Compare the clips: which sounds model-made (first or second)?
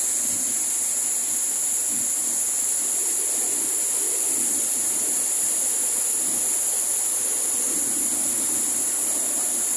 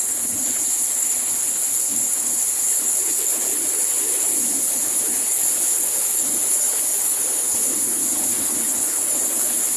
second